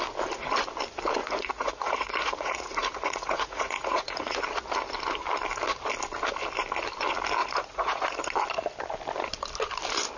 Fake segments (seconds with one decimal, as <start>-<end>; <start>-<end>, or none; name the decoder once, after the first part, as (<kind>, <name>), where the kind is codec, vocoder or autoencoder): 1.2-4.4 (vocoder, Vocos); 7.4-8.2